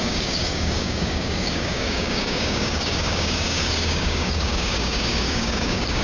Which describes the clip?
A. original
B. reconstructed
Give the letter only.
B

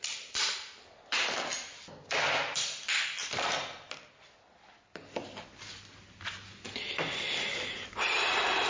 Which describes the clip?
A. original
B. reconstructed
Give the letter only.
A